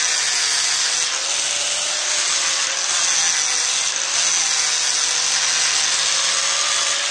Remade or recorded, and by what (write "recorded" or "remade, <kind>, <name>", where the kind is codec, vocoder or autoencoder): recorded